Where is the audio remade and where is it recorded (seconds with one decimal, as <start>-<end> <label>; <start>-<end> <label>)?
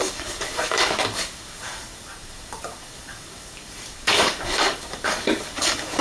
0.0-6.0 remade